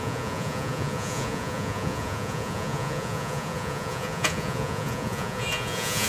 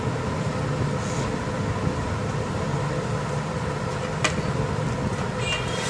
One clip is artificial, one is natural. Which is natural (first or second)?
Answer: second